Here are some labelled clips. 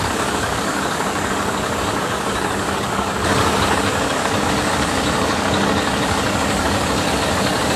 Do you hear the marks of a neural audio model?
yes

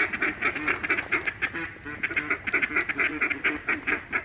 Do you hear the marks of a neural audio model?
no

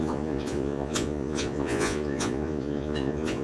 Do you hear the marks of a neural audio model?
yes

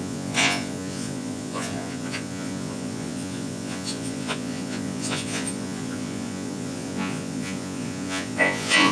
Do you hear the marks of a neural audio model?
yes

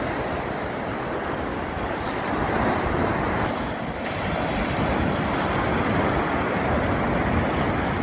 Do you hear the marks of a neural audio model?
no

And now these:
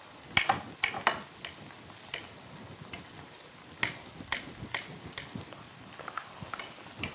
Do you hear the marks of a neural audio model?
no